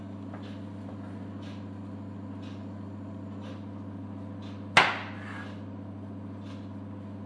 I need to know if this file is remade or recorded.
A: recorded